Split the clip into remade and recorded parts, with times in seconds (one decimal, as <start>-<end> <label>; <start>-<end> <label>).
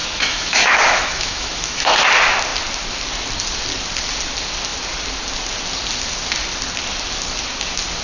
0.0-1.9 remade; 1.9-8.0 recorded